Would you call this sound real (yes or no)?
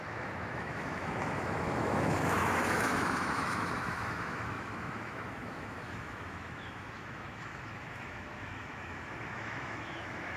no